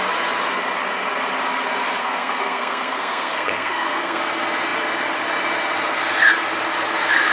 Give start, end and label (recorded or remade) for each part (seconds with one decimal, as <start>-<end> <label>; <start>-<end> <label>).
0.0-2.0 recorded; 2.0-4.2 remade; 4.2-7.3 recorded